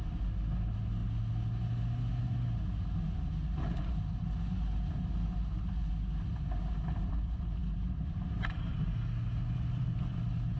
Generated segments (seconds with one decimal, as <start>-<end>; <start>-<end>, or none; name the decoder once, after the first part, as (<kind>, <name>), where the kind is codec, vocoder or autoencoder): none